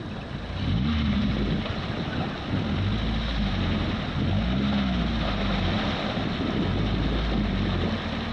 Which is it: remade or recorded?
recorded